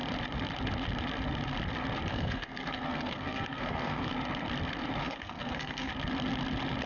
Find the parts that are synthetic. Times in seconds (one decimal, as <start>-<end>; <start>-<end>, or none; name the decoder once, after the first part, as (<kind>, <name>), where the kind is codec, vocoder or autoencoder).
2.1-4.1 (codec, SNAC); 5.0-5.9